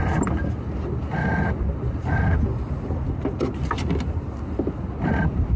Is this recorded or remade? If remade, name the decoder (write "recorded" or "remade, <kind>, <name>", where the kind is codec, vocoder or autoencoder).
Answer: recorded